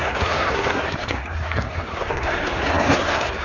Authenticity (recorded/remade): remade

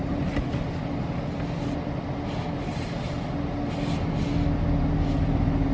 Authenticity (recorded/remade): recorded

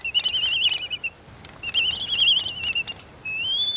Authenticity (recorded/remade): recorded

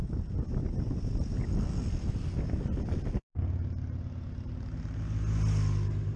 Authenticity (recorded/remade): recorded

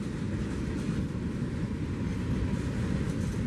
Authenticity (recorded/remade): recorded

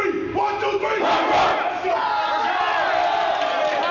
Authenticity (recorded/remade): recorded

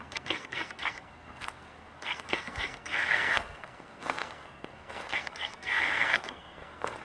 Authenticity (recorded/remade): remade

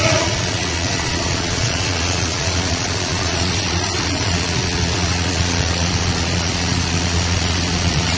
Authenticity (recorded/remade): remade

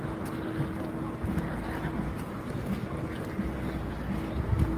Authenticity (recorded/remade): recorded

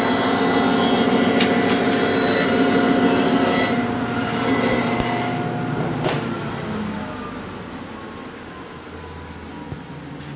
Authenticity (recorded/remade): recorded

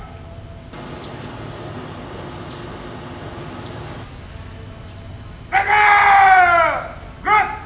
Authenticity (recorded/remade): recorded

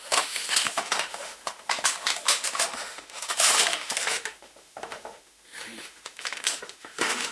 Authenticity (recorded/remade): remade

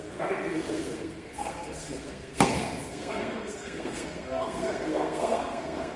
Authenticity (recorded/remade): remade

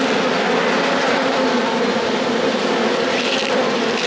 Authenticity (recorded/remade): recorded